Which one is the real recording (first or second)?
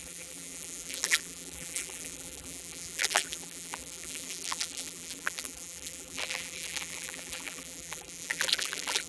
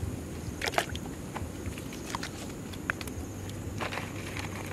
second